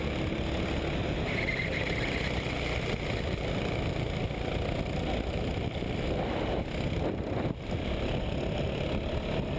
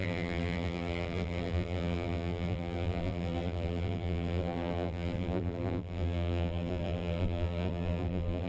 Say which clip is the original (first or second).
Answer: first